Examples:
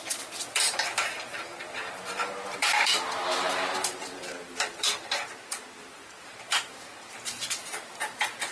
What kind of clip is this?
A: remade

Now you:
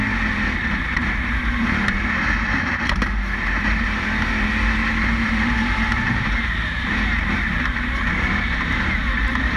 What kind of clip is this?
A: remade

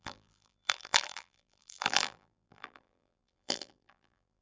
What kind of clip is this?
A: remade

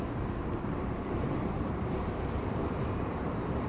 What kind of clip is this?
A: remade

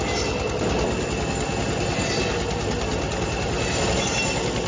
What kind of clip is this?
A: recorded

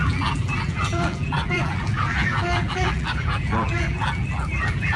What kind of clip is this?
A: remade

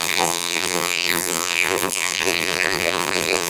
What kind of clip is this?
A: remade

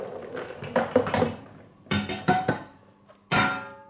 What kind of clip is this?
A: recorded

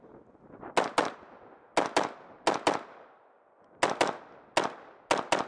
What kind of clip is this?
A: recorded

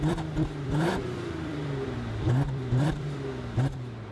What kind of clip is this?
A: remade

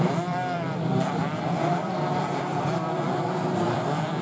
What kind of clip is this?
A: remade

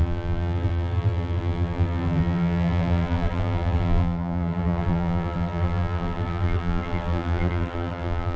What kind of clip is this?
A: remade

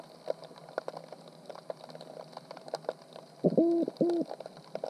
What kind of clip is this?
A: recorded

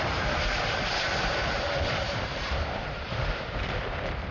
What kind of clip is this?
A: remade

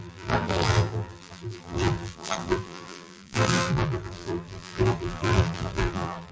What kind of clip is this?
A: remade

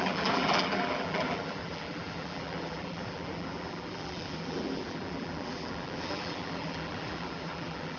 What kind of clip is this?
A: remade